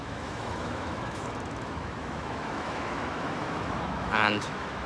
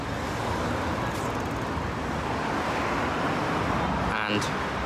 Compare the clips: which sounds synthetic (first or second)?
first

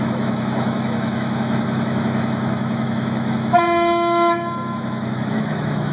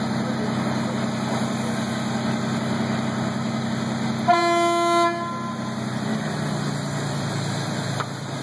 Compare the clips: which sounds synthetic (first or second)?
first